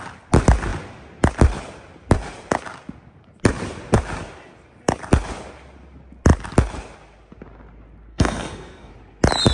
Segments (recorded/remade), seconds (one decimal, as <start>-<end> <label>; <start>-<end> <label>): 0.0-8.1 recorded; 8.1-8.9 remade; 8.9-9.5 recorded

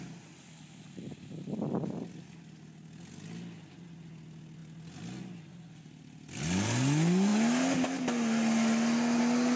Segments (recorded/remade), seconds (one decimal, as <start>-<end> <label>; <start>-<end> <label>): 0.0-9.6 recorded

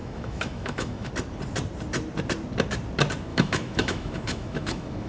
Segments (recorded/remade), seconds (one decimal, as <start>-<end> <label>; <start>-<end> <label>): 0.0-1.1 remade; 1.1-3.3 recorded; 3.3-5.1 remade

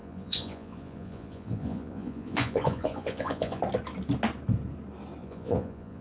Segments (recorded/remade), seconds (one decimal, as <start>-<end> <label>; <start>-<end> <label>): 0.0-3.6 remade; 3.6-5.2 recorded; 5.2-6.0 remade

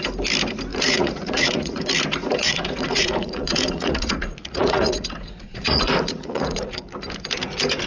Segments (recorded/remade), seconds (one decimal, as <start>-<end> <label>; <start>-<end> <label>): 0.0-0.7 recorded; 0.7-1.8 remade; 1.8-2.4 recorded; 2.4-6.8 remade; 6.8-7.9 recorded

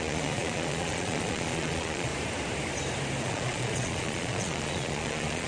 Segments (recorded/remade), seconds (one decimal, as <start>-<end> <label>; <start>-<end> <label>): 0.0-2.1 remade; 2.1-3.2 recorded; 3.2-5.5 remade

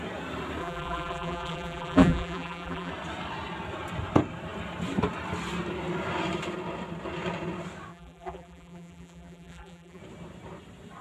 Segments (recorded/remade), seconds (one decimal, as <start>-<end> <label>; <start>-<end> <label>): 0.0-0.6 recorded; 0.6-2.9 remade; 2.9-7.9 recorded; 7.9-10.0 remade; 10.0-11.0 recorded